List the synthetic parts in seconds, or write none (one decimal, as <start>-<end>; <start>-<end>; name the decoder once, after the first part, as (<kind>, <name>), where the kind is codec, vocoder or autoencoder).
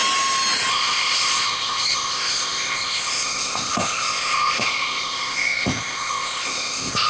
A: 0.7-7.1 (codec, ZipCodec)